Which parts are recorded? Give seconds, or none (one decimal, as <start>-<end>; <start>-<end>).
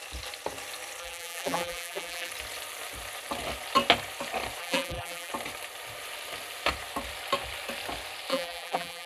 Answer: 0.0-1.0; 2.3-4.6; 5.3-8.3